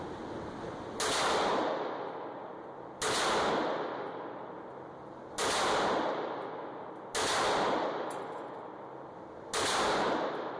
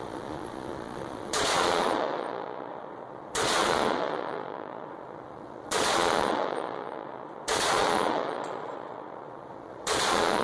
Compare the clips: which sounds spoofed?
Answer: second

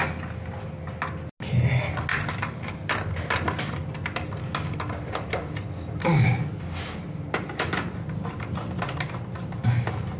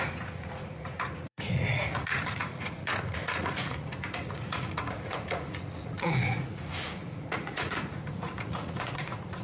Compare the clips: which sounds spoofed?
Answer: second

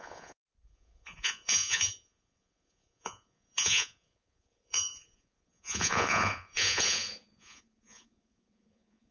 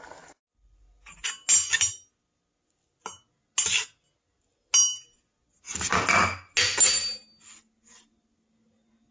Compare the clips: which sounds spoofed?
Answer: first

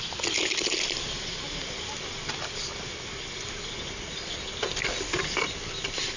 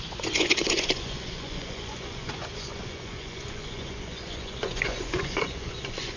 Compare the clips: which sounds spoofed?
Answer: second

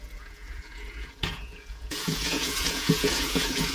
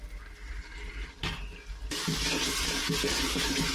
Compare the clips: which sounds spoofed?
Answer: first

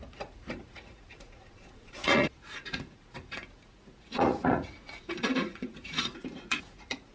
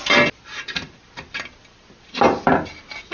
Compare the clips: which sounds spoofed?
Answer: first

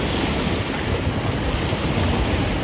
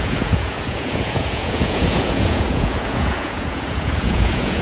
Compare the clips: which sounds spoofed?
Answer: second